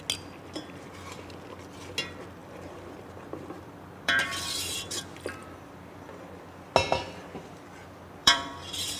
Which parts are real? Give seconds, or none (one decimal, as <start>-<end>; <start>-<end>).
0.0-2.4; 5.0-5.4; 6.4-8.2